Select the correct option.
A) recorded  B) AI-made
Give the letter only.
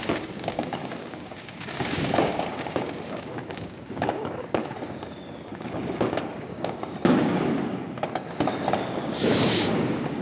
B